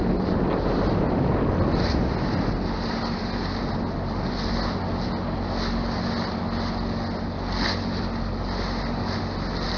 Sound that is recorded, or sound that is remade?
recorded